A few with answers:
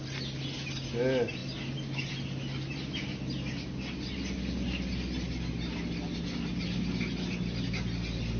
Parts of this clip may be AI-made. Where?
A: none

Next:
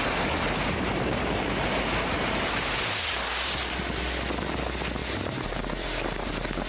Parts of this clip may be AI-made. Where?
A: 0.0-3.8 (vocoder, BigVGAN v2); 5.0-5.6

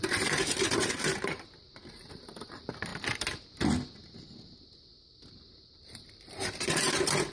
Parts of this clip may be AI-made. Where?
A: 0.0-2.9 (vocoder, BigVGAN v2); 5.3-7.3

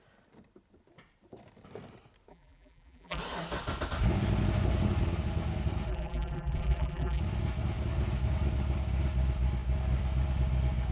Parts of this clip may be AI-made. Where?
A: 2.3-3.2 (vocoder, BigVGAN v2); 5.9-7.2

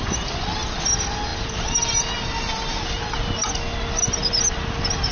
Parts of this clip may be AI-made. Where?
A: none

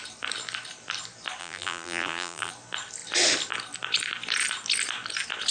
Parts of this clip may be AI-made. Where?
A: 1.4-2.5 (vocoder, BigVGAN v2)